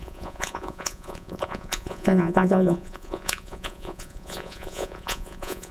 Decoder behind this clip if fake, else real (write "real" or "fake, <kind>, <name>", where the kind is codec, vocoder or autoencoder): fake, vocoder, Vocos